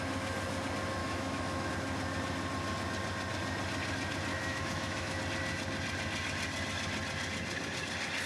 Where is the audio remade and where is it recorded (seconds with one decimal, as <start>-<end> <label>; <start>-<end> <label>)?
0.0-1.0 recorded; 1.0-1.7 remade; 1.7-4.3 recorded; 4.3-5.2 remade; 5.2-8.3 recorded